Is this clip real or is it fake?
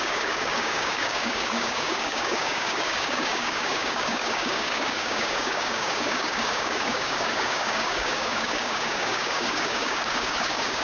fake